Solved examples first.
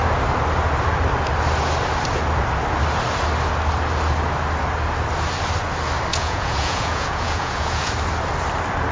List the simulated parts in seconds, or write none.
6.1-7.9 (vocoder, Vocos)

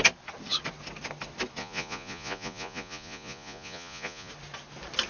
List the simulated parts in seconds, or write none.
1.6-4.3 (vocoder, Vocos)

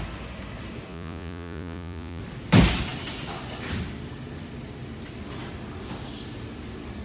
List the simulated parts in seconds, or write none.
0.9-2.2 (vocoder, Vocos)

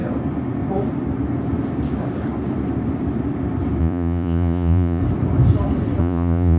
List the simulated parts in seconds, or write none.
3.8-5.0 (vocoder, Vocos); 6.0-6.6

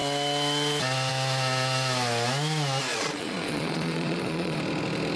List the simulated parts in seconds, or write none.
2.9-4.6 (vocoder, Vocos)

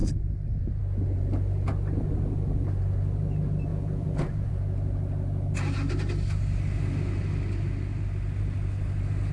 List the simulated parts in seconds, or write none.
3.7-4.5 (vocoder, Vocos)

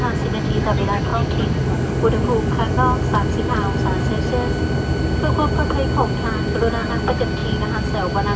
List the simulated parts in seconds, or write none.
none

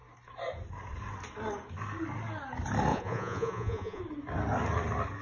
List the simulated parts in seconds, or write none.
2.9-4.0 (vocoder, Vocos)